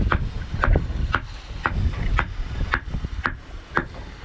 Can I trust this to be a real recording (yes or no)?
no